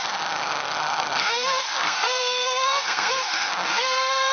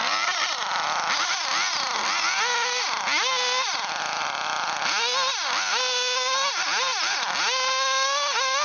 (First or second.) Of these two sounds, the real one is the second